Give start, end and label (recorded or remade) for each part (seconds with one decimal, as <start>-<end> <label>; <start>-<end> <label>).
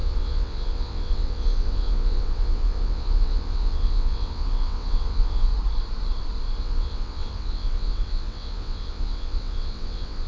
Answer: 0.0-5.5 remade; 5.5-6.6 recorded; 6.6-10.3 remade